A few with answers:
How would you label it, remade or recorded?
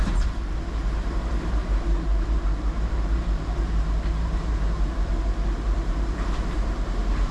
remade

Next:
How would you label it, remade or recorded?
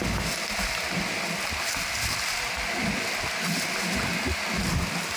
recorded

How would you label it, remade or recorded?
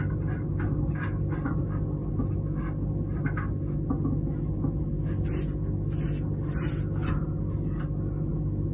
recorded